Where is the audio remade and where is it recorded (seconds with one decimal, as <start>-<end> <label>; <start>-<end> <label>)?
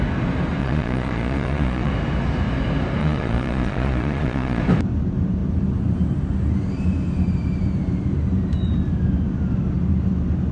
0.0-0.6 recorded; 0.6-1.9 remade; 1.9-3.0 recorded; 3.0-4.6 remade; 4.6-10.5 recorded